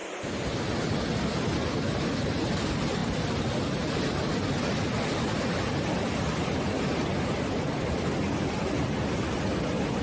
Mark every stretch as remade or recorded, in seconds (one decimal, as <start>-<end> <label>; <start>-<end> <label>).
0.0-3.0 recorded; 3.0-7.9 remade; 7.9-10.0 recorded